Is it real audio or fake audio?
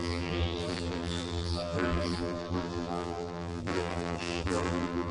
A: fake